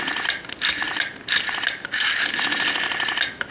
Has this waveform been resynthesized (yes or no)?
no